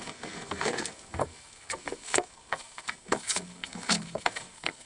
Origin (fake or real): fake